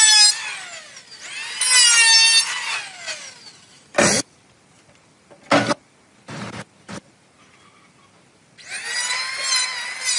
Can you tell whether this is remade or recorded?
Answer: recorded